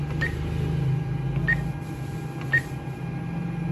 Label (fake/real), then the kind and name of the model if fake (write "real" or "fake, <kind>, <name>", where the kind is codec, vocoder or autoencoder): real